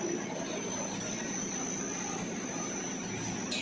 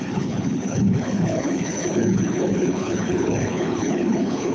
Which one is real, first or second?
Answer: first